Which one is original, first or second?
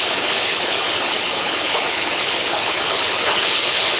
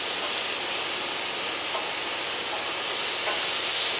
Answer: second